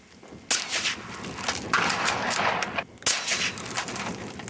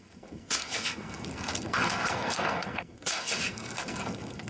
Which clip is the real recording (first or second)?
first